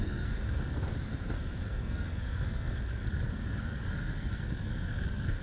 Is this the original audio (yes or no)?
no